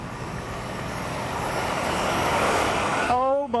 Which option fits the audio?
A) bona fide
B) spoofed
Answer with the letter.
B